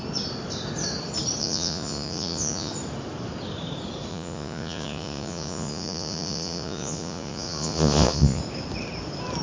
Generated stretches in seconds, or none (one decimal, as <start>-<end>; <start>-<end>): 1.4-2.7; 4.1-8.4

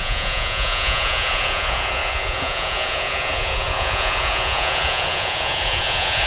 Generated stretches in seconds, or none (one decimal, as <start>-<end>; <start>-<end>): 0.0-6.3

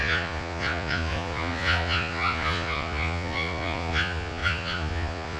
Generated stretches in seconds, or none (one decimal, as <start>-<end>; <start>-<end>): 0.0-5.4

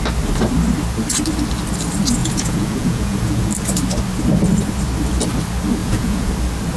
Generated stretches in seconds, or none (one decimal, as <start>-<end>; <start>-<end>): 2.2-3.5; 5.8-6.3

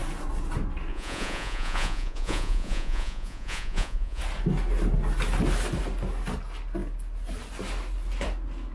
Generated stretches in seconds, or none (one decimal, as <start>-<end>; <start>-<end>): 0.9-4.2